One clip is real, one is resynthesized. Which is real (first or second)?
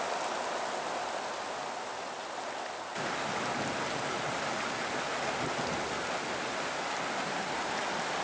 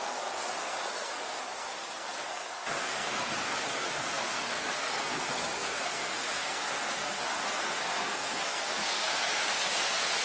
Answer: first